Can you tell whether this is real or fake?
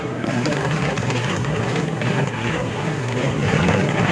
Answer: fake